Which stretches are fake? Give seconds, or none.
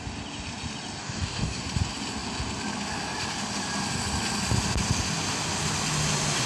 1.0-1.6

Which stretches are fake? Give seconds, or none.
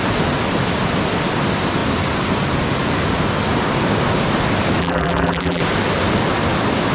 4.8-5.6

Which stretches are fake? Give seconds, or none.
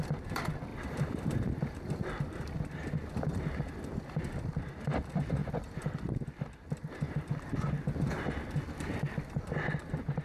0.7-1.9; 5.4-5.9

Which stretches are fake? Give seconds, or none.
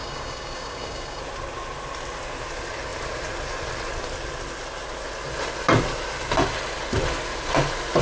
0.0-1.2